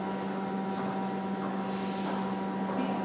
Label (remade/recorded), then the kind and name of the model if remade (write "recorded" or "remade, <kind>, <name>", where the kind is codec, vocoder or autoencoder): recorded